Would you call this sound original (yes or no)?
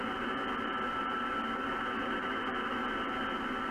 yes